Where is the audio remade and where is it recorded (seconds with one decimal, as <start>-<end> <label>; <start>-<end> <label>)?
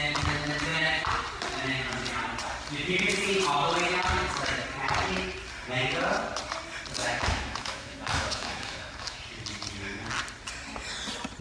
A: 0.0-7.0 recorded; 7.0-9.2 remade; 9.2-11.4 recorded